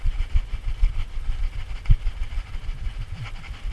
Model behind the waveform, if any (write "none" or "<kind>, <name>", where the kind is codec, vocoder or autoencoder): none